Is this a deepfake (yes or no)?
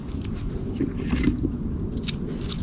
no